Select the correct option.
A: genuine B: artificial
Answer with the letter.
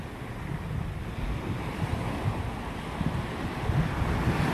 A